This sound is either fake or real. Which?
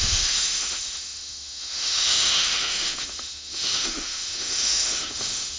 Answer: fake